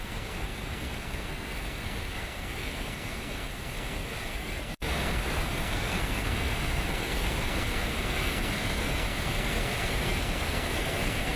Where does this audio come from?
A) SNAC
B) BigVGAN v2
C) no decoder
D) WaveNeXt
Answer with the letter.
A